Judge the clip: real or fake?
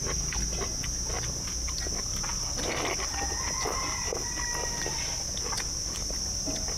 real